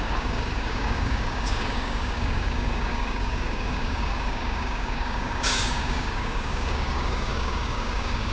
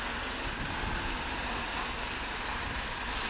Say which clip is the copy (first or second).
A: first